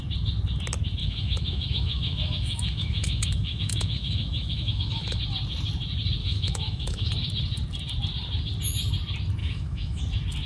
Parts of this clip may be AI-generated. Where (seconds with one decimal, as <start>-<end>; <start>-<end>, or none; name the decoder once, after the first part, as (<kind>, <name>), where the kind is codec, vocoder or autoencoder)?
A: 1.0-5.2 (autoencoder, DAC-VAE); 6.2-7.1; 9.4-10.0